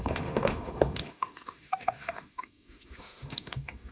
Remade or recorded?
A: remade